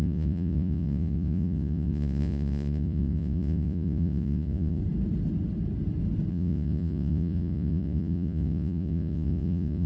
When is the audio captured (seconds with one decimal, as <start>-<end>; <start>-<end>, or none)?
4.8-6.3